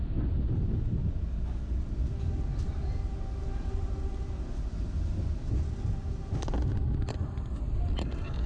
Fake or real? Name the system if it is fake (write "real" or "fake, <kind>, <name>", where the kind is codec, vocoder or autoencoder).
real